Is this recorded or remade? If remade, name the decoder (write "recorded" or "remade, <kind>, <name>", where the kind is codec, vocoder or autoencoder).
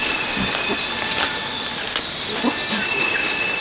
recorded